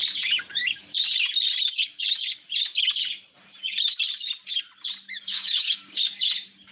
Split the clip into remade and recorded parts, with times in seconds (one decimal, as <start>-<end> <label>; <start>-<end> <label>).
0.0-5.3 recorded; 5.3-6.3 remade; 6.3-6.7 recorded